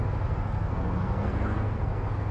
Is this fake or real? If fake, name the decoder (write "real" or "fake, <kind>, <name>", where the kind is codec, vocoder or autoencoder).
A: fake, codec, SNAC